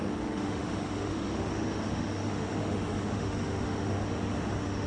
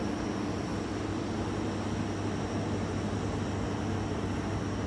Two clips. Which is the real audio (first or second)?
second